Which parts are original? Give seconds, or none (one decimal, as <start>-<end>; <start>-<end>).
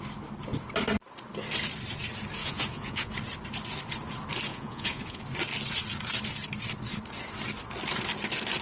0.0-2.4; 3.1-4.5; 5.2-8.6